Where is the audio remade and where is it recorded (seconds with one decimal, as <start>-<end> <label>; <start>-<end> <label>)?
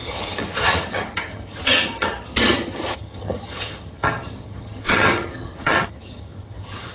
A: 0.0-6.9 remade